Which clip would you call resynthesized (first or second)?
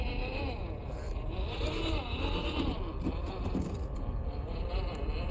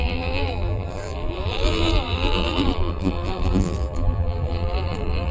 second